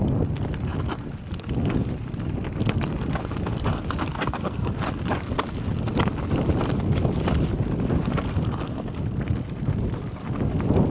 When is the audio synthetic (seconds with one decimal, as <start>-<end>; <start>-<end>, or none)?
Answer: 4.1-4.7